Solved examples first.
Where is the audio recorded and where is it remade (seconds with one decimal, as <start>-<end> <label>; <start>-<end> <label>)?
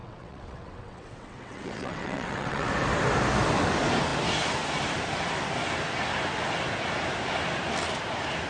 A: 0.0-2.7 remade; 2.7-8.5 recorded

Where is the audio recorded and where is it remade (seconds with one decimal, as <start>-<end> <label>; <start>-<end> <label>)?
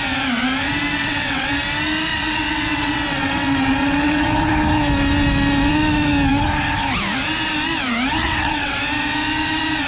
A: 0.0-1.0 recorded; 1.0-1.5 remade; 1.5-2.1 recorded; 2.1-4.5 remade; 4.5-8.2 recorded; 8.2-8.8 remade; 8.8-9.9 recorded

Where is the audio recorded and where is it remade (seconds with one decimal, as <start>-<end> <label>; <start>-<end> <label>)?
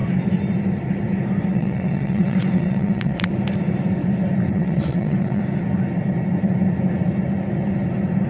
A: 0.0-1.5 recorded; 1.5-3.3 remade; 3.3-4.5 recorded; 4.5-5.4 remade; 5.4-8.3 recorded